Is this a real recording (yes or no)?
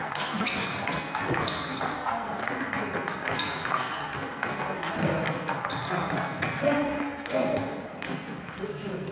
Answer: no